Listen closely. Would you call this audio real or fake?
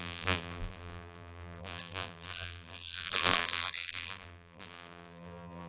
fake